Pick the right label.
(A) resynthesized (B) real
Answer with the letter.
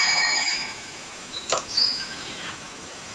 A